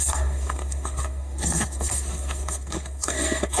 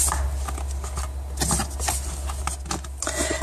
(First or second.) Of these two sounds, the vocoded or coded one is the first